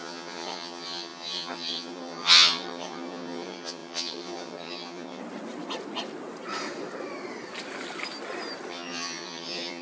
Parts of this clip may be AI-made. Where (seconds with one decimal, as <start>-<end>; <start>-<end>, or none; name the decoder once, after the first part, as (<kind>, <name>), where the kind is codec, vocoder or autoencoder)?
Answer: 0.0-5.2 (vocoder, HiFi-GAN); 8.7-9.8